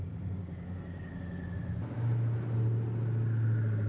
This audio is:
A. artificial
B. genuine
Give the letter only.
B